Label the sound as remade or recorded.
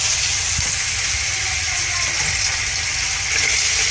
recorded